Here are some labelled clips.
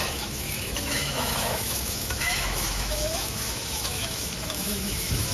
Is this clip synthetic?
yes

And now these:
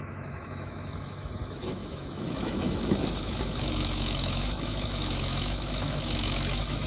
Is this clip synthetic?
yes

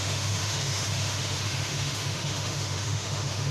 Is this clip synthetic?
yes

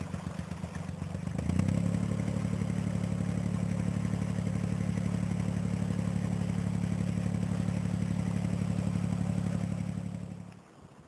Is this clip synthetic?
no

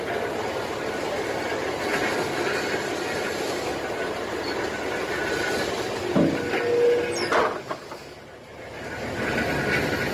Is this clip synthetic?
no